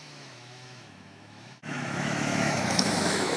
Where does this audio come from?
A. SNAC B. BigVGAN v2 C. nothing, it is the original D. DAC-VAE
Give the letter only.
D